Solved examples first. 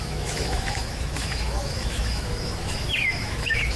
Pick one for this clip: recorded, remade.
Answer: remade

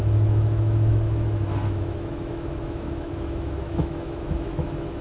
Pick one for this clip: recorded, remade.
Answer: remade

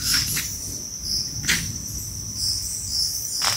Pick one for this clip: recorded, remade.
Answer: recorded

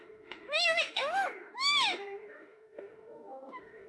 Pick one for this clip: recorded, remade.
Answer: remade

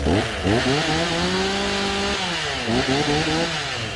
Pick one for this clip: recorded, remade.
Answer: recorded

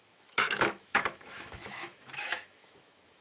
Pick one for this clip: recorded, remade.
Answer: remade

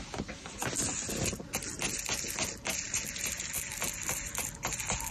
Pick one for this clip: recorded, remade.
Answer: recorded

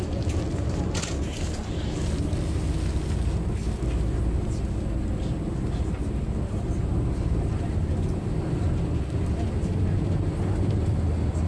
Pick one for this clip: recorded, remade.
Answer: recorded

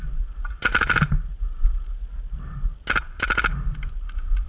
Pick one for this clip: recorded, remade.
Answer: recorded